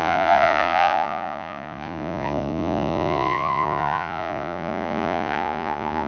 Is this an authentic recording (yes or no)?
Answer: no